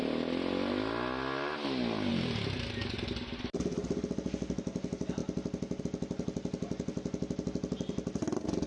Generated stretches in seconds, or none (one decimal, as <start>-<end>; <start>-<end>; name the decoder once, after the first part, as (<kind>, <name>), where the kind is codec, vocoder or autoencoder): none